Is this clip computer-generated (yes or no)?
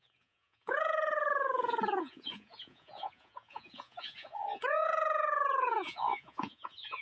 yes